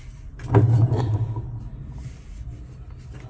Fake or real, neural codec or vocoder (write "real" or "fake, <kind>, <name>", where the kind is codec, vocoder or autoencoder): real